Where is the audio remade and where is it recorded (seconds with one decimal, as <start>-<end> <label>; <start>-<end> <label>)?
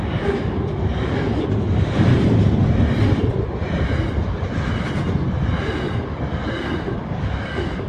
0.0-2.1 remade; 2.1-6.0 recorded; 6.0-7.9 remade